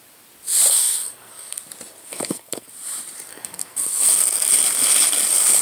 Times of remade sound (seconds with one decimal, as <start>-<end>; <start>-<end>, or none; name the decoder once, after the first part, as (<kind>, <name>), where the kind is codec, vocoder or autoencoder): 0.7-1.6 (codec, SNAC); 2.0-2.7; 3.3-4.5